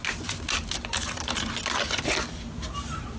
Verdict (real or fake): real